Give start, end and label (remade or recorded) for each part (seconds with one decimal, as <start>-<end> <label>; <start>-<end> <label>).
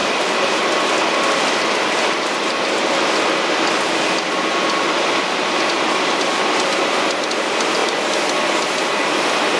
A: 0.0-9.6 recorded